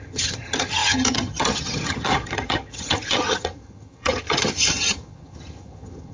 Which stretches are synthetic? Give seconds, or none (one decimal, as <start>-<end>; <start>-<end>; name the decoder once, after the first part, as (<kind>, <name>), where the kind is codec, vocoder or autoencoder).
0.0-6.1 (vocoder, HiFi-GAN)